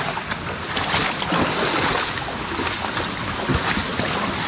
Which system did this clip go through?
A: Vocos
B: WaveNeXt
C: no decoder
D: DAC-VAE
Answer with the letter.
C